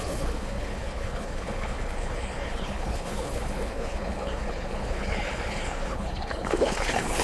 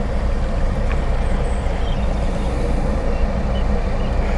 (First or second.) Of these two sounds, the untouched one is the second